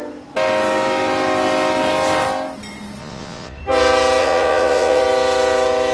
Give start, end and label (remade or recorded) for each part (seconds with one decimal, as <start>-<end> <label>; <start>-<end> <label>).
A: 0.0-3.0 recorded; 3.0-3.6 remade; 3.6-4.2 recorded; 4.2-5.0 remade; 5.0-5.9 recorded